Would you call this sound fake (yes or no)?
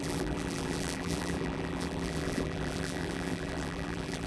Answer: yes